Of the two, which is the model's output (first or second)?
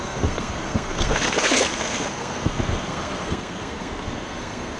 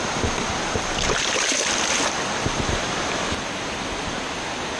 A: first